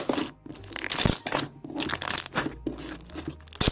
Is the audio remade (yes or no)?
no